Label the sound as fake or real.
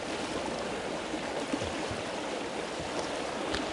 real